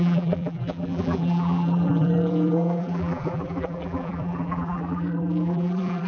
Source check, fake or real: fake